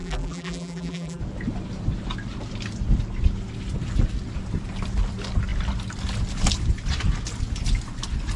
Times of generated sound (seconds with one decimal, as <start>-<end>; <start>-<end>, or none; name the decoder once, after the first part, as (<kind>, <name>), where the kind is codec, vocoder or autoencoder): 0.0-1.2 (vocoder, BigVGAN v2)